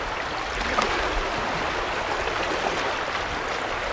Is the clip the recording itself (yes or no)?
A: yes